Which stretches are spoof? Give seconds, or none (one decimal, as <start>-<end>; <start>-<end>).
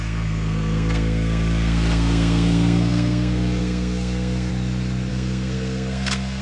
0.0-4.5; 5.1-6.4